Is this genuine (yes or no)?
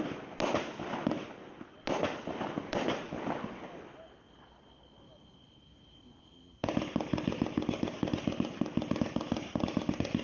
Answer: yes